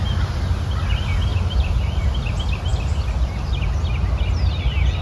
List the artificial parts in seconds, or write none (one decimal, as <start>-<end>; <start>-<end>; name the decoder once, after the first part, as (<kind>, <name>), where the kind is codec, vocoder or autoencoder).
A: none